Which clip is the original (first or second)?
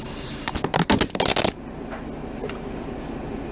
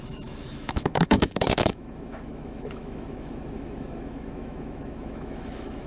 first